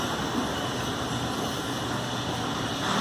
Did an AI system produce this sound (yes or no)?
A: no